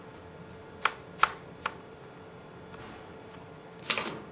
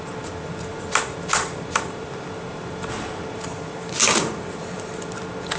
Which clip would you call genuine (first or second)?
first